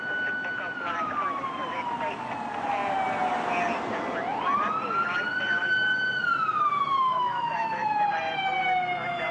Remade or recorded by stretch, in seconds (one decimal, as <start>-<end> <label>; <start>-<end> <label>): 0.0-6.7 recorded; 6.7-8.1 remade; 8.1-9.3 recorded